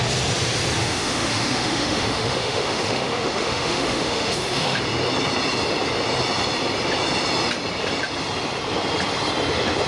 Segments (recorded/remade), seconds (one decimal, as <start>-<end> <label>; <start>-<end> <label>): 0.0-0.8 recorded; 0.8-4.8 remade; 4.8-9.9 recorded